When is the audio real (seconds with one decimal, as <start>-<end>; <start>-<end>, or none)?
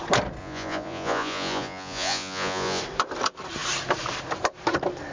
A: 0.0-0.4; 2.8-5.1